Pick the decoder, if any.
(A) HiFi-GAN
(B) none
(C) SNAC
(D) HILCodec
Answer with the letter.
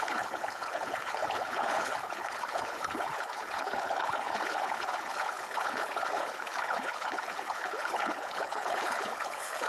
D